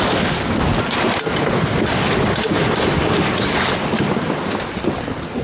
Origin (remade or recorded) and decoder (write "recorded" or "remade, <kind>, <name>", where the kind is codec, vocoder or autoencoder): recorded